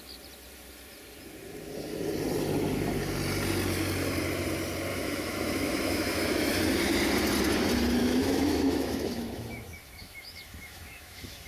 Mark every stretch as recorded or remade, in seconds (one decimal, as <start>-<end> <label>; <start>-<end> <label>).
0.0-4.9 recorded; 4.9-6.5 remade; 6.5-8.0 recorded; 8.0-11.5 remade